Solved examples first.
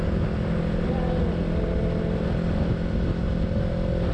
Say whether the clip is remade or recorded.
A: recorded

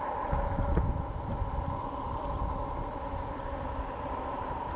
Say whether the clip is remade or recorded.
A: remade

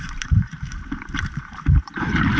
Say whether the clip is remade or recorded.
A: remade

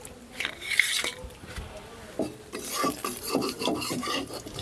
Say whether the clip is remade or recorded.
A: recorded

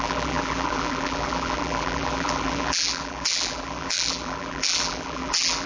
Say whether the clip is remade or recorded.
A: remade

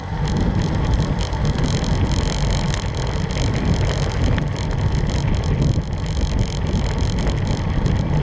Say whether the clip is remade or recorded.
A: recorded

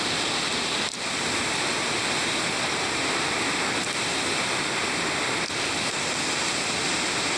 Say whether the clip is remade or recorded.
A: recorded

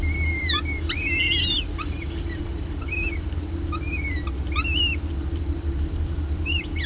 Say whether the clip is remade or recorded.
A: recorded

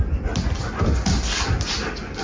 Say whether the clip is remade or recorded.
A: recorded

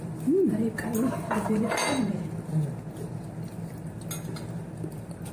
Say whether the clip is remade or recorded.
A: recorded